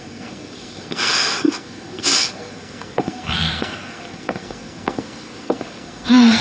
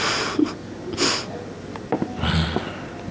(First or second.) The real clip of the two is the second